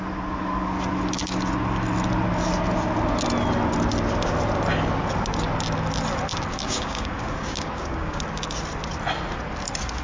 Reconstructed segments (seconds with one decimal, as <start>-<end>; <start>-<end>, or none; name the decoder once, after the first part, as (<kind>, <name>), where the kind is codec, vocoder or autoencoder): 6.5-8.2 (codec, DAC)